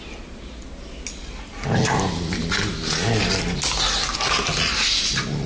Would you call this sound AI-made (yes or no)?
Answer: no